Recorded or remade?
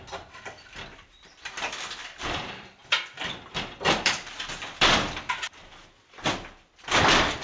remade